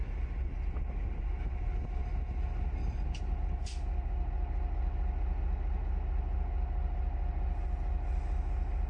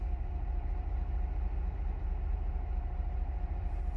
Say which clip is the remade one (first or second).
second